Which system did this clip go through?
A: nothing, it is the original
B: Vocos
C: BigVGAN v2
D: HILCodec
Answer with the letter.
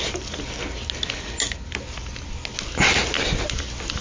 A